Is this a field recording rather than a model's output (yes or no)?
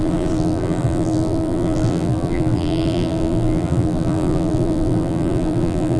no